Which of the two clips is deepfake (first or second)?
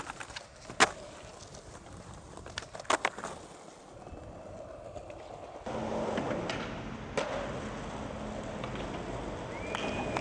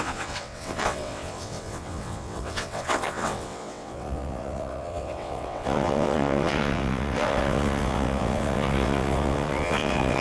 second